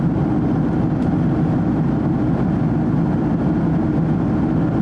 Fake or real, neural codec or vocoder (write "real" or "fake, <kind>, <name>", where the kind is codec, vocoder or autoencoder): real